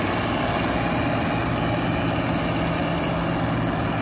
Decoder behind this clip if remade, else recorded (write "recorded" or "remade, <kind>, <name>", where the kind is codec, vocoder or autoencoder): recorded